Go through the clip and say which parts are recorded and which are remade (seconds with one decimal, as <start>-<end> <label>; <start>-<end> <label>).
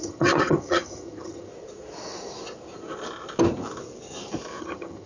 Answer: 0.0-1.5 remade; 1.5-4.6 recorded; 4.6-5.1 remade